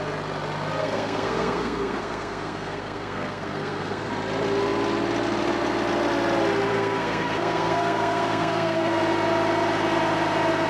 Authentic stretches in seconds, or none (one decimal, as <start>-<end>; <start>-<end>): 0.0-0.8; 4.1-6.7; 9.0-10.7